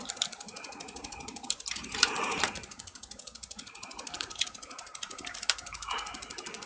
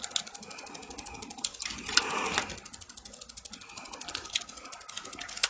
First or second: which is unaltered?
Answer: second